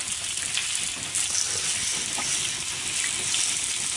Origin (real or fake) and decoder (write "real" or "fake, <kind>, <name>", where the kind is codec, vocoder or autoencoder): real